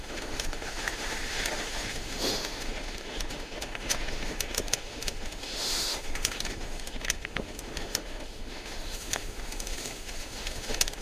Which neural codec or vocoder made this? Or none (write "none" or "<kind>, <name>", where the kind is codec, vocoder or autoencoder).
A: autoencoder, DAC-VAE